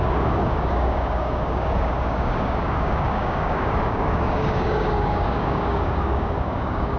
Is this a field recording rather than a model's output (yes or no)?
no